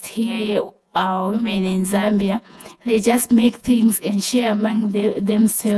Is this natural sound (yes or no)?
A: no